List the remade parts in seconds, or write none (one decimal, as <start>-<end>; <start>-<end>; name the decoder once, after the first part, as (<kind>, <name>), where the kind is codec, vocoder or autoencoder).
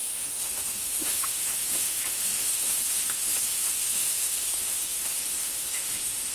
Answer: 0.0-6.3 (autoencoder, DAC-VAE)